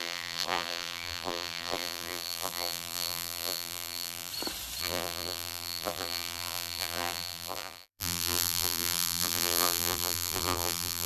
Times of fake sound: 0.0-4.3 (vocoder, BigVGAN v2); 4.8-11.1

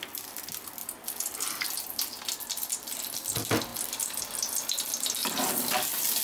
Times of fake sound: 0.8-2.7 (vocoder, BigVGAN v2); 3.7-4.2; 5.2-6.2

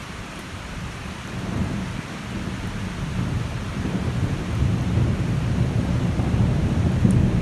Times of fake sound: 0.0-0.9 (vocoder, BigVGAN v2)

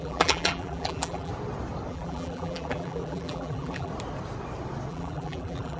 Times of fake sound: 0.0-1.3 (vocoder, BigVGAN v2); 1.9-3.9; 4.9-5.8

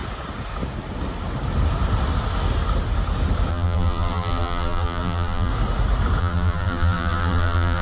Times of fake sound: 3.5-5.5 (vocoder, BigVGAN v2); 6.2-7.8